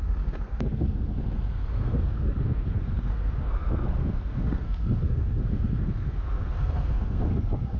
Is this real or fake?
fake